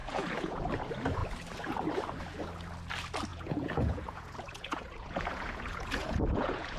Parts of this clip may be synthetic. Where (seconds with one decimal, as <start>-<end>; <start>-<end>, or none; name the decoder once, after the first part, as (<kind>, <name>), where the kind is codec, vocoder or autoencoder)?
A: 0.0-0.6 (vocoder, Vocos); 3.3-6.8